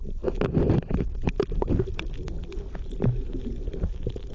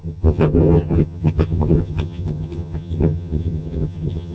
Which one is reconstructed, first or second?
second